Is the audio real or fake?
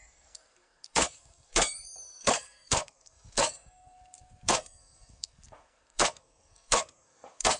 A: fake